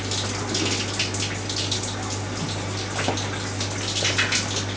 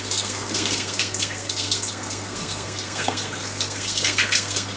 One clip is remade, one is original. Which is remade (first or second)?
second